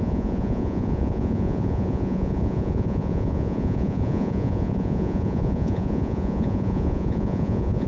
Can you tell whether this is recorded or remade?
remade